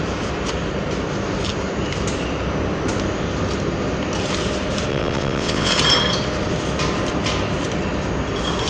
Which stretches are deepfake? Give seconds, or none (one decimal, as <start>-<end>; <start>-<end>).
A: 4.9-5.7